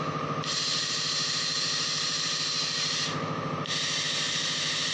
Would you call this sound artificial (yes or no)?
yes